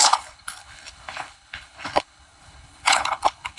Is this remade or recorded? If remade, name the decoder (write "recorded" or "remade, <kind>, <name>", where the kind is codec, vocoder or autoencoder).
remade, codec, HILCodec